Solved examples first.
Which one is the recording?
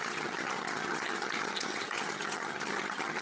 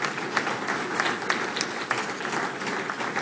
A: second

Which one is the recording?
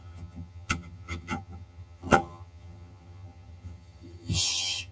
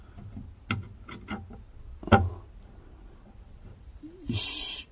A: second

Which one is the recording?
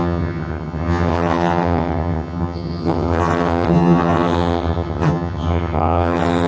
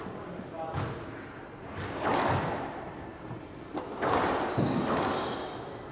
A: second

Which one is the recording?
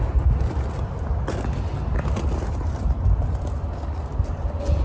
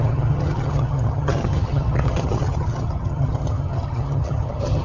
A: first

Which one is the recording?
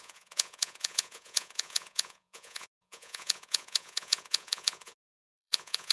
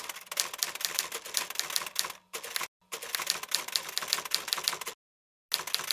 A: second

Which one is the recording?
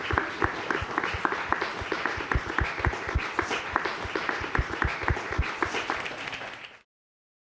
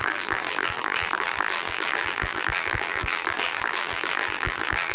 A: first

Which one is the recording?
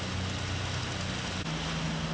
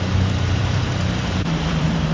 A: first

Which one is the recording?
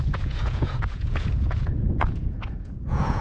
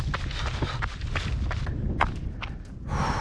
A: second